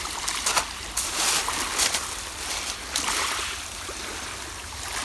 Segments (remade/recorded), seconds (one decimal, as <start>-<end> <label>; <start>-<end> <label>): 0.0-5.0 recorded